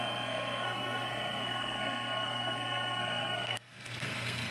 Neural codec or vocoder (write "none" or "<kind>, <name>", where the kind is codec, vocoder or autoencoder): codec, SNAC